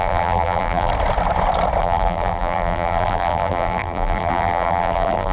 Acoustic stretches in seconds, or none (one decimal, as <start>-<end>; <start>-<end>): 0.9-1.8